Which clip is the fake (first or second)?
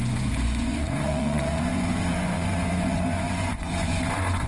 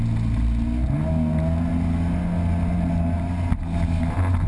first